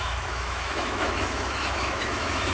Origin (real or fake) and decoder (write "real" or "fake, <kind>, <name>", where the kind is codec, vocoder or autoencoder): fake, autoencoder, DAC-VAE